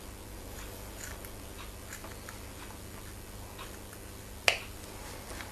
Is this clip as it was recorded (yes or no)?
yes